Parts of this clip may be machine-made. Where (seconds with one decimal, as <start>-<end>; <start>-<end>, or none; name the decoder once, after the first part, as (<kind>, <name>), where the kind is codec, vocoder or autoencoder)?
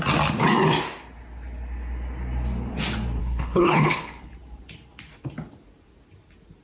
3.2-4.3 (codec, HILCodec)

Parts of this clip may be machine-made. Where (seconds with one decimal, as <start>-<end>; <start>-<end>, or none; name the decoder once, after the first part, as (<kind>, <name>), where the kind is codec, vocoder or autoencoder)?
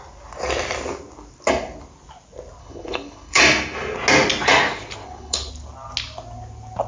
2.6-3.4 (codec, HILCodec); 5.0-5.5